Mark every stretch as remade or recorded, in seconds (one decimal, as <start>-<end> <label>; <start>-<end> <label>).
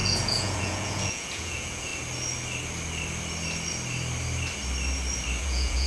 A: 0.0-1.9 remade; 1.9-5.4 recorded; 5.4-5.9 remade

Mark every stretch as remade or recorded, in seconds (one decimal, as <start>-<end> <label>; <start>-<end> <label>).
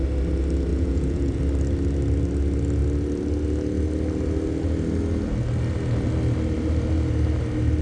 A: 0.0-0.7 recorded; 0.7-1.4 remade; 1.4-7.8 recorded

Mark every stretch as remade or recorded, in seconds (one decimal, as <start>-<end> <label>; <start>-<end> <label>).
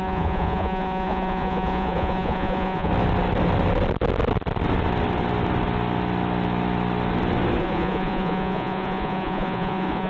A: 0.0-2.9 remade; 2.9-7.6 recorded; 7.6-10.1 remade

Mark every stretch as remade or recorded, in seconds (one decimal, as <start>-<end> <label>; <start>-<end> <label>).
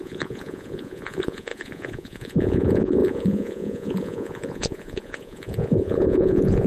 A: 0.0-6.7 remade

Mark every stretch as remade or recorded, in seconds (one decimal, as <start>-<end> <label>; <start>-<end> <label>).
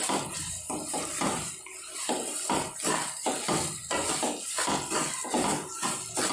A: 0.0-6.3 recorded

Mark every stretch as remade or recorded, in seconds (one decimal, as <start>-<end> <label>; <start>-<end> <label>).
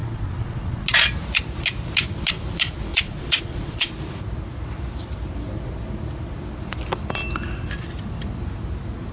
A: 0.0-0.8 remade; 0.8-2.9 recorded; 2.9-3.9 remade; 3.9-9.1 recorded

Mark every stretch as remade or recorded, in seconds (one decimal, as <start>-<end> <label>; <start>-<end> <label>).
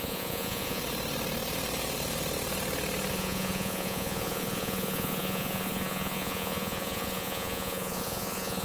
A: 0.0-0.8 remade; 0.8-3.1 recorded; 3.1-8.6 remade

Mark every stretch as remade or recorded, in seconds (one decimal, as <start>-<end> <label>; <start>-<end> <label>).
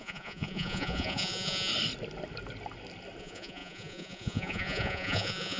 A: 0.0-1.7 remade; 1.7-3.2 recorded; 3.2-5.6 remade